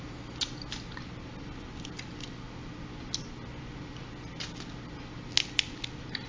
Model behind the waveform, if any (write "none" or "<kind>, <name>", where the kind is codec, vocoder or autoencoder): none